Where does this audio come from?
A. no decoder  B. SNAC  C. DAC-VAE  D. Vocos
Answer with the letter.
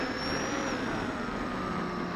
A